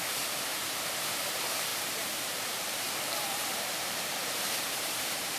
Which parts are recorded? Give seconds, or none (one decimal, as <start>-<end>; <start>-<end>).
0.5-1.1